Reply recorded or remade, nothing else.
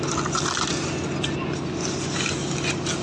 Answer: recorded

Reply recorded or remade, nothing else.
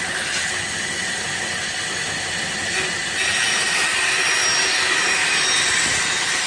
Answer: recorded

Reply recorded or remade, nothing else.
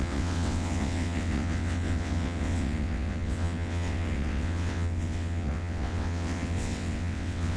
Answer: remade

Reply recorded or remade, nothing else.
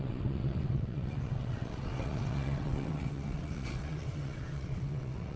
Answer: remade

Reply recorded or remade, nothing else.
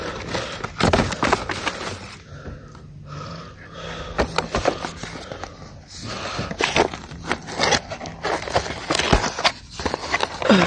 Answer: recorded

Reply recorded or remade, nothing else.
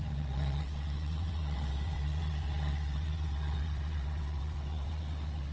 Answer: remade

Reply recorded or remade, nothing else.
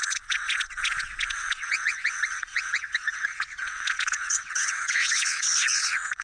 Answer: remade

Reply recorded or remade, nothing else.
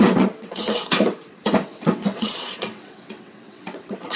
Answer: remade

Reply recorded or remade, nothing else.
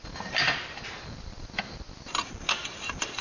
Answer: recorded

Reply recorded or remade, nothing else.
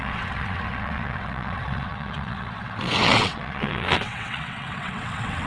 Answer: remade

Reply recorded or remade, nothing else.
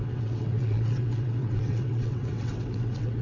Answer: remade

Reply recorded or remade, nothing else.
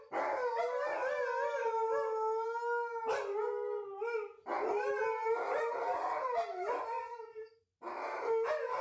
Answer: recorded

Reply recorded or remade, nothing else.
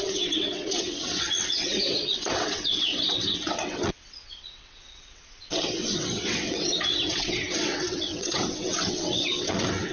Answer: remade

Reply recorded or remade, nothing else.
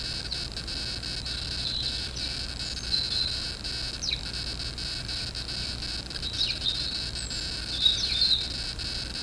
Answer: recorded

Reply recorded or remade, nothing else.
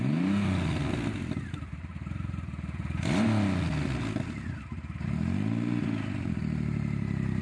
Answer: recorded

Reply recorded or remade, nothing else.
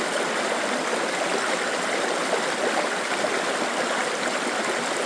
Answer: recorded